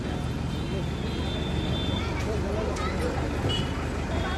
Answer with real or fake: real